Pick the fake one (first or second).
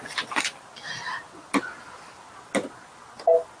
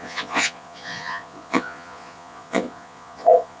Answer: second